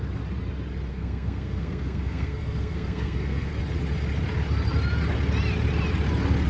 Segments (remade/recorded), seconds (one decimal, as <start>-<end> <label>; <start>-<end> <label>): 0.0-0.9 recorded; 0.9-3.5 remade; 3.5-6.5 recorded